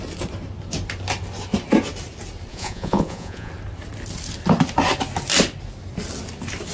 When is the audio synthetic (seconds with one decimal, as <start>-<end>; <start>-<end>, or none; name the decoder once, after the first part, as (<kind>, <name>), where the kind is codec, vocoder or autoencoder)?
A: 2.5-3.5 (vocoder, Vocos)